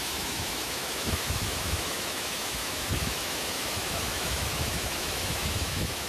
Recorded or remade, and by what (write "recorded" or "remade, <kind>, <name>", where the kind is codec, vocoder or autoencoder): remade, autoencoder, DAC-VAE